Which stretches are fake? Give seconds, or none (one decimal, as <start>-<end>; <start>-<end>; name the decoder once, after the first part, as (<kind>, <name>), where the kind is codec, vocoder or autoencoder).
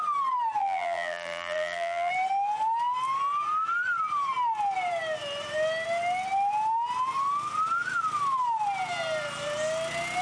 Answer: 0.6-2.1 (vocoder, BigVGAN v2)